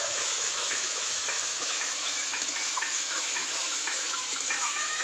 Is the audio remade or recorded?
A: remade